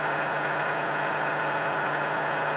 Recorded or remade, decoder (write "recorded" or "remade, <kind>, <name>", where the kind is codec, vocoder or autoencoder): recorded